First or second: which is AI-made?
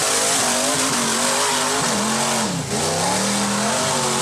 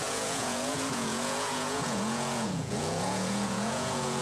second